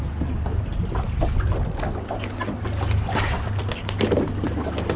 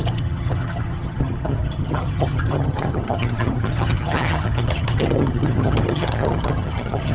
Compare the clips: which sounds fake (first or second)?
second